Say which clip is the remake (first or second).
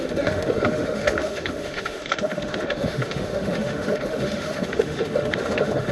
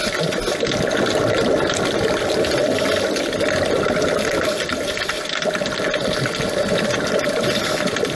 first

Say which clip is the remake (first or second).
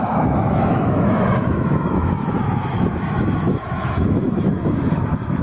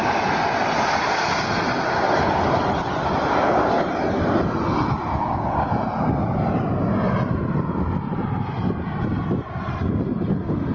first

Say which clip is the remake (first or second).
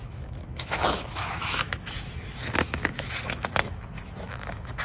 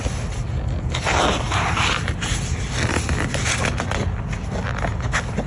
first